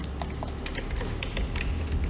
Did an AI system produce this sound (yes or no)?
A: no